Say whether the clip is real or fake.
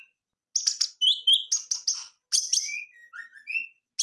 real